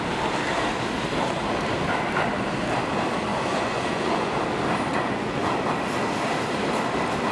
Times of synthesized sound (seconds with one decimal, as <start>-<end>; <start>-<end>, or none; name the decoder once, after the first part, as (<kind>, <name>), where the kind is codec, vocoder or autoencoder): 3.3-4.3 (vocoder, Vocos); 4.9-5.5